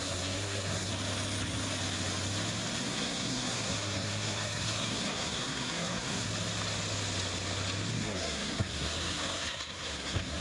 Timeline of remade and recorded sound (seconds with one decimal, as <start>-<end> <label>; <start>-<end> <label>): 0.0-0.9 remade; 0.9-2.8 recorded; 2.8-6.3 remade; 6.3-7.9 recorded; 7.9-10.4 remade